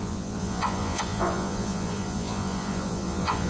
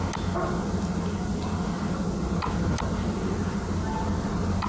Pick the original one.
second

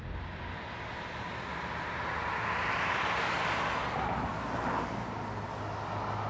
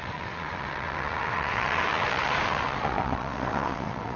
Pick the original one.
first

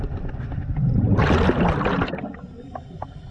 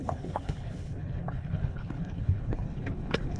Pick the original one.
first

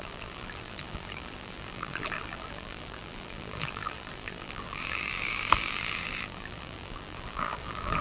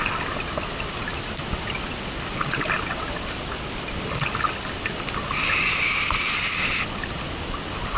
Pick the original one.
second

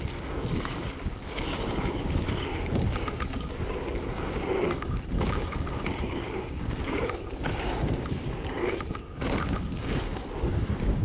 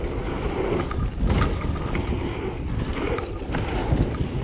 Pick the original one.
second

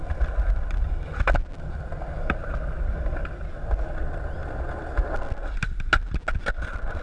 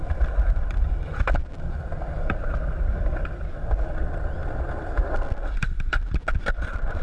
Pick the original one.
first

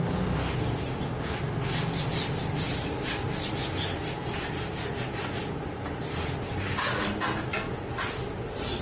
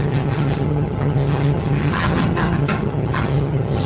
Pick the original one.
first